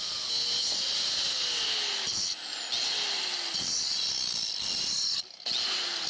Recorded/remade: recorded